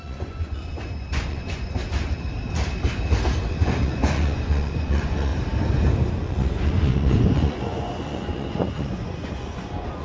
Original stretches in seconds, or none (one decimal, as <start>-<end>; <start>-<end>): 1.8-3.5; 5.3-6.1